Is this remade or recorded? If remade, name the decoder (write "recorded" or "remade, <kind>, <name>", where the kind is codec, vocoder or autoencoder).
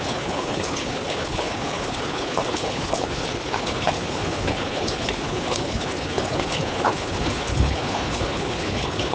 remade, codec, HILCodec